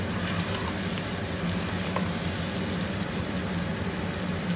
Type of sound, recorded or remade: recorded